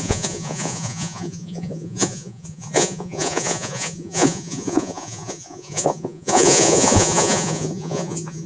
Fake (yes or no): yes